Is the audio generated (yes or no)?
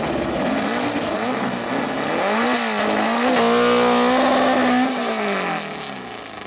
no